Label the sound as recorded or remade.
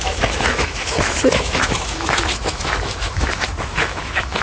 remade